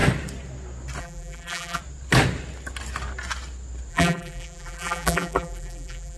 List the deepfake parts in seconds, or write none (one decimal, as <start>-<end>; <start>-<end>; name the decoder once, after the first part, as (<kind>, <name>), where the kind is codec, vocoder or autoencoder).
1.0-1.8 (vocoder, BigVGAN v2); 3.9-6.2